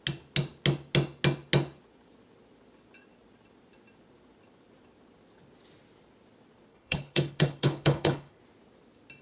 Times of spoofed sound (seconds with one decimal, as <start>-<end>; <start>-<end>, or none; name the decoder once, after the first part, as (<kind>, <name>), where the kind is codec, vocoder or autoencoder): 6.7-8.4 (codec, HILCodec)